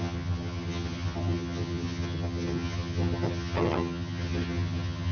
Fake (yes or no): yes